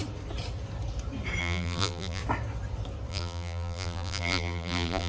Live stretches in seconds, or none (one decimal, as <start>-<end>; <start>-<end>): 0.0-1.4; 2.2-3.1